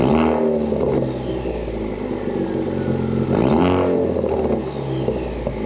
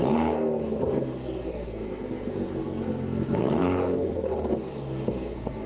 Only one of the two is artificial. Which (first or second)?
second